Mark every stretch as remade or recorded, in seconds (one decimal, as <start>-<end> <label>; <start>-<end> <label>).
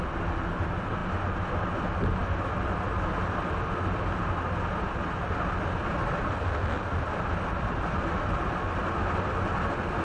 0.0-10.0 recorded